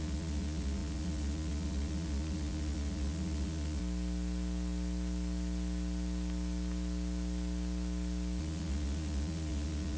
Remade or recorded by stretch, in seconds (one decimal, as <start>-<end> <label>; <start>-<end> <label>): 0.0-3.8 remade; 3.8-8.4 recorded; 8.4-10.0 remade